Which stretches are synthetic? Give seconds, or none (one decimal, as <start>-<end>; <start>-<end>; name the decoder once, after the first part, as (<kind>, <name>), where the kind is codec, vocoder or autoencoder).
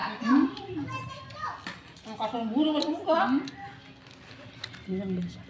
none